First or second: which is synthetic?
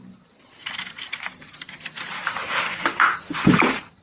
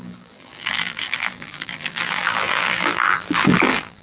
second